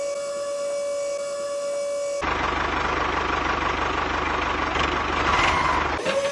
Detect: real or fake real